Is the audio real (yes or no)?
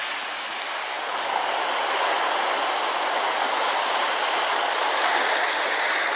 yes